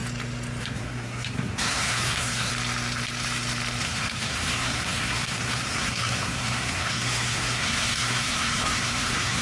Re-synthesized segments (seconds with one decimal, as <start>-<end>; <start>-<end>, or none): 0.6-2.5; 3.8-9.4